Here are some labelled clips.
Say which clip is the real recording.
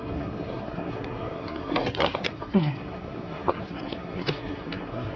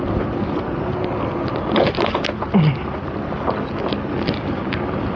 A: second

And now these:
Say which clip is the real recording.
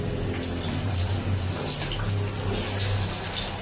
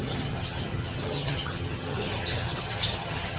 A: first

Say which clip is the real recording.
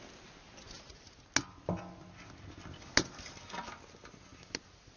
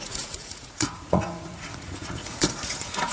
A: first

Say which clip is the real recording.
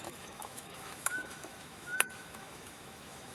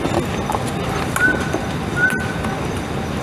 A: second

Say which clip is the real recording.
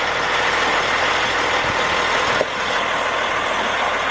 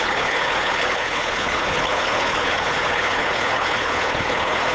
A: first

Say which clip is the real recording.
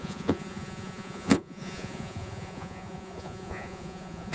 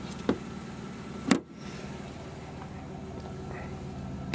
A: second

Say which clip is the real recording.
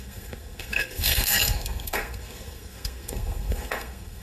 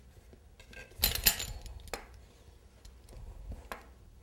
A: second